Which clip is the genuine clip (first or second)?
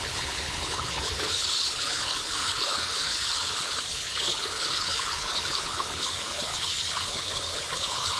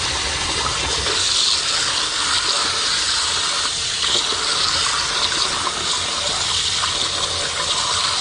second